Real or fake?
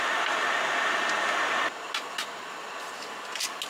real